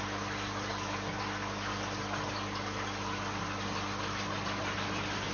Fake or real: real